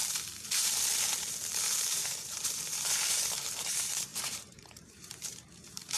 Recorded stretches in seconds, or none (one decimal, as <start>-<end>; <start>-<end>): 0.0-1.6